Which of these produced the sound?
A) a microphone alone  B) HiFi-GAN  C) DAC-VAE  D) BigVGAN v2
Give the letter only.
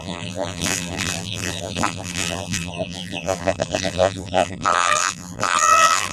D